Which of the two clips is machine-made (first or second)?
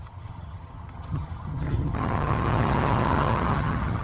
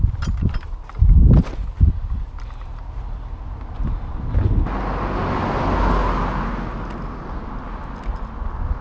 first